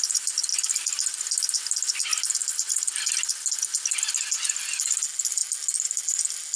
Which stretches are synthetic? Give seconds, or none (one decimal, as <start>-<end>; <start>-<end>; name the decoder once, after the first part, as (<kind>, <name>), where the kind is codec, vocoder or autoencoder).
none